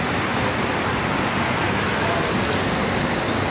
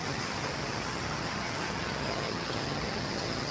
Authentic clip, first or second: first